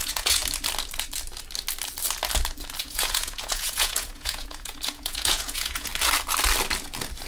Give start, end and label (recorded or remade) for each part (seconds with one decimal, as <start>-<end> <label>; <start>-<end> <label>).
0.0-0.4 remade; 0.4-2.8 recorded; 2.8-5.9 remade; 5.9-7.3 recorded